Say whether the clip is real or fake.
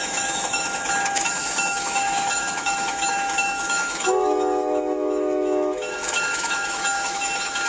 fake